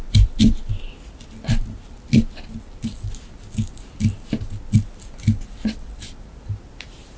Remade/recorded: recorded